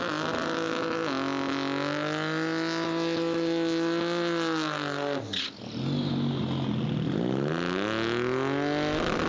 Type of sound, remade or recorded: recorded